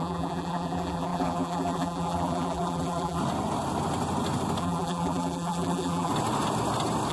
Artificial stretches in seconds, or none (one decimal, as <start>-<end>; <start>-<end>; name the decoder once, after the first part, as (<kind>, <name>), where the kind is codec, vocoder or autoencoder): 0.0-3.2 (vocoder, BigVGAN v2); 4.6-6.1